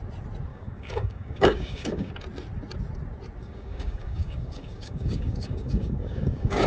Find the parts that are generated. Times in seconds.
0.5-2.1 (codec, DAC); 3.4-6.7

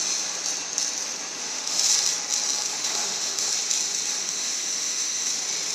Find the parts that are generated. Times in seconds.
1.4-1.9 (autoencoder, DAC-VAE); 2.7-3.5; 4.2-5.3

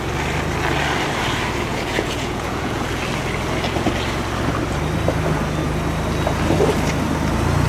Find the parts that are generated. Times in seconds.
1.7-2.8 (vocoder, Vocos)

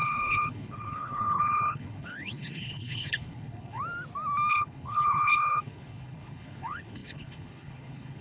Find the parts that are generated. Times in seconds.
0.0-3.8 (codec, HILCodec); 4.5-8.2

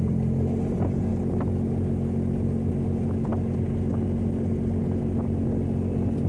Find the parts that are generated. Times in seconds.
none